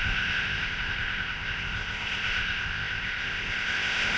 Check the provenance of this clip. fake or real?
fake